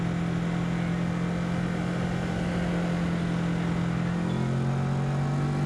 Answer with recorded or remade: recorded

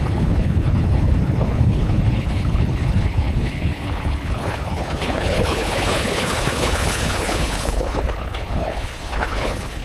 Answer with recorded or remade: remade